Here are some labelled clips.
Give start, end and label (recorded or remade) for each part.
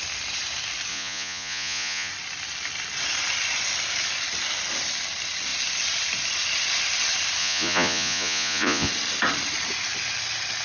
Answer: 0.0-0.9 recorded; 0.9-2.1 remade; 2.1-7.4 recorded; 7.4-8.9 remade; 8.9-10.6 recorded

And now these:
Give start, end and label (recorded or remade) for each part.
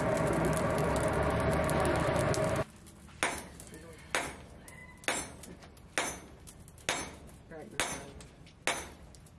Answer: 0.0-9.4 recorded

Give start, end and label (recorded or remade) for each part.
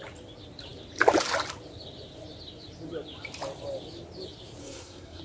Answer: 0.0-4.6 recorded; 4.6-5.2 remade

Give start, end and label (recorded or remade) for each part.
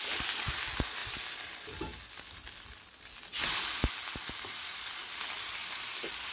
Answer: 0.0-6.3 recorded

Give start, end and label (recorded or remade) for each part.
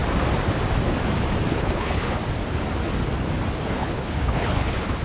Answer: 0.0-1.5 recorded; 1.5-2.2 remade; 2.2-3.7 recorded; 3.7-5.0 remade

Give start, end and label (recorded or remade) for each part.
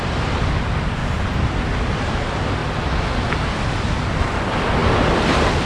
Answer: 0.0-5.7 recorded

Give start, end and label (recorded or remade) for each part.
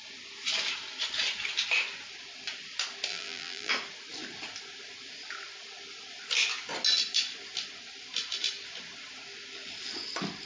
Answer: 0.0-3.1 recorded; 3.1-3.7 remade; 3.7-10.5 recorded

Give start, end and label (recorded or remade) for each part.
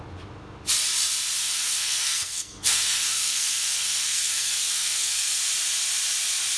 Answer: 0.0-1.4 recorded; 1.4-5.4 remade; 5.4-6.6 recorded